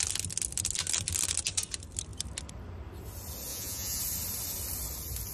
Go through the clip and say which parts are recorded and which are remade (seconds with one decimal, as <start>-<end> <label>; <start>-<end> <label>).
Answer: 0.0-3.5 recorded; 3.5-4.0 remade; 4.0-5.3 recorded